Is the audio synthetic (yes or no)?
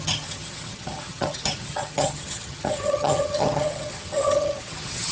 yes